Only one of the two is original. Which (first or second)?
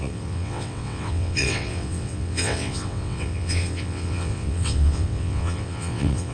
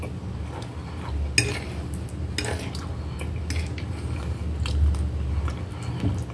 second